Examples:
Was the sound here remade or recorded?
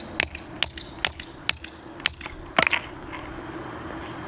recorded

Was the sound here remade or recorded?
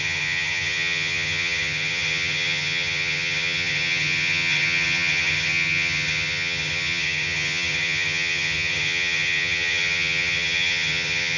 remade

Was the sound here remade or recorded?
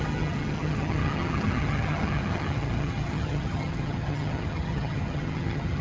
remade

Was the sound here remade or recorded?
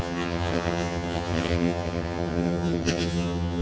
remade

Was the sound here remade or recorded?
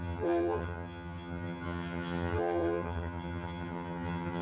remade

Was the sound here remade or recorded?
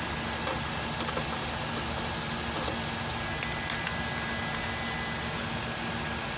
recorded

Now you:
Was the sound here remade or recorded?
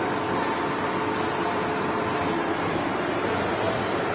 recorded